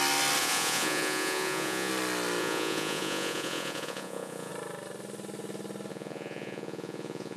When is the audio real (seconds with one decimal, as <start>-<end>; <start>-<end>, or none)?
0.0-0.4; 1.9-2.4; 4.5-5.9